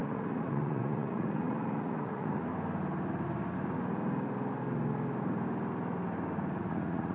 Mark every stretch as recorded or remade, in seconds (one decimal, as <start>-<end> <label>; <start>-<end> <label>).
0.0-2.5 remade; 2.5-6.6 recorded; 6.6-7.1 remade